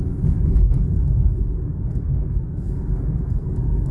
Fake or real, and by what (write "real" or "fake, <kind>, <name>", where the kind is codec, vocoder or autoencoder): fake, codec, SNAC